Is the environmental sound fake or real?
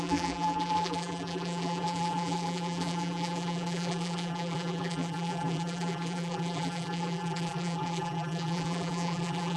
fake